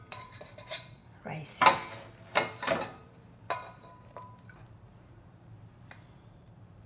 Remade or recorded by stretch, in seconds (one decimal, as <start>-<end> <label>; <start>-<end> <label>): 0.0-1.0 remade; 1.0-2.3 recorded; 2.3-6.9 remade